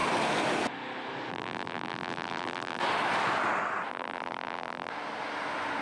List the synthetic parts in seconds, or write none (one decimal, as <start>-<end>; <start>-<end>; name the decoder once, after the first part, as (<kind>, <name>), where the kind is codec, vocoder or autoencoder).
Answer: 1.3-2.8 (vocoder, BigVGAN v2); 3.9-4.9